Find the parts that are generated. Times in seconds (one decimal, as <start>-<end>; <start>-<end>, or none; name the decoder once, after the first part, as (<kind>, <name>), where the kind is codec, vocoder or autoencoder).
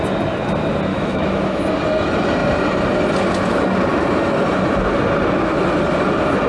0.9-1.6 (autoencoder, DAC-VAE)